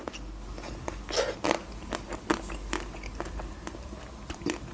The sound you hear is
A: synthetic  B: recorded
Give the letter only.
B